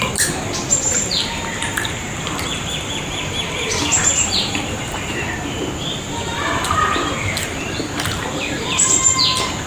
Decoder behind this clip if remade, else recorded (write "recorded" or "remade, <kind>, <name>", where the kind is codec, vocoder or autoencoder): remade, vocoder, BigVGAN v2